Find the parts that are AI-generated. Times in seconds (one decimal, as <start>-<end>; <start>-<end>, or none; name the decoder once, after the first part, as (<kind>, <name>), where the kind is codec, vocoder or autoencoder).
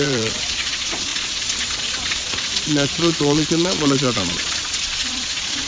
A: 0.0-5.7 (vocoder, Vocos)